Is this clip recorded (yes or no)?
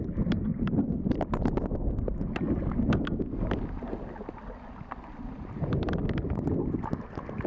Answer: yes